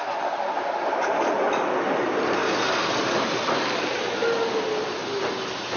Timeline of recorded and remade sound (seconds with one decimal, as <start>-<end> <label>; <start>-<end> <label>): 0.0-5.8 recorded